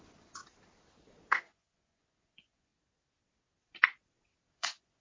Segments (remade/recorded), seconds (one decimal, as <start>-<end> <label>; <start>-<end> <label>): 0.0-0.4 remade; 0.4-1.4 recorded; 1.4-2.7 remade; 2.7-4.5 recorded; 4.5-5.0 remade